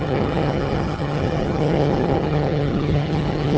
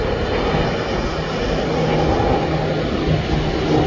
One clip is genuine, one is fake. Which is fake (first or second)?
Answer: first